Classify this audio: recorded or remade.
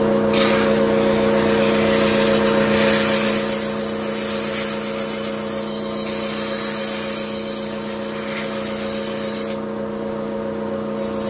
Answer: recorded